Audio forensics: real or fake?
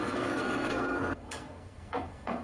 fake